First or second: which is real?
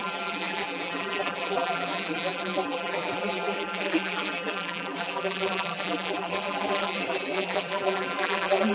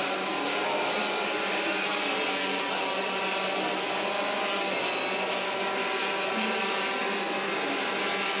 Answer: second